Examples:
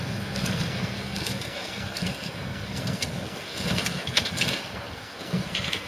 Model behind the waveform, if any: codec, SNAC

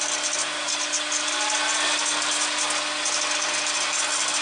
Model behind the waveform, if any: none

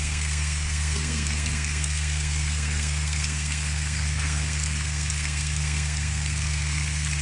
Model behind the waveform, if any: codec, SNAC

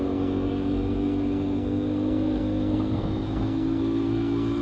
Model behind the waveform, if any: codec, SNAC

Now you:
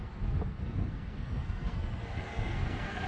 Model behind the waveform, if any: codec, SNAC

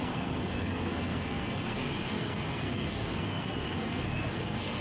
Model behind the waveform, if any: codec, SNAC